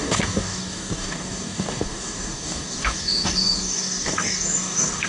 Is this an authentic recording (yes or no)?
no